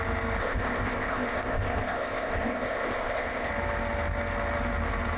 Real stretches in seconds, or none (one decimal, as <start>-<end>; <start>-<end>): 0.0-0.4; 3.5-5.2